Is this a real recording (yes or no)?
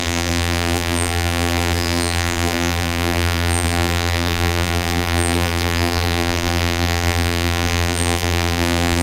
no